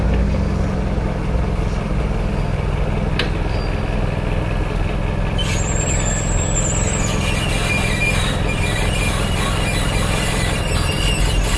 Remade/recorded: recorded